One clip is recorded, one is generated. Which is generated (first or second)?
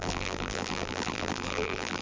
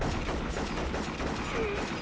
first